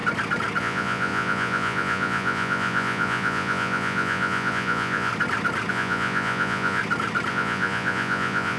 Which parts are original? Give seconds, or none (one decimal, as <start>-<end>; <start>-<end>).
0.0-0.6; 5.1-5.7; 6.8-7.3